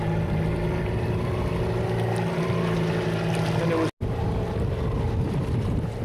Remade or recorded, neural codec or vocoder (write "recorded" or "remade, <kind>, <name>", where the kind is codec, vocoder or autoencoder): recorded